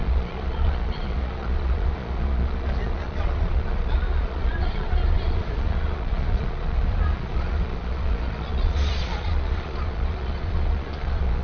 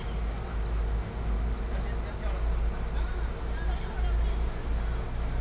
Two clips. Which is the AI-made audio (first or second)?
first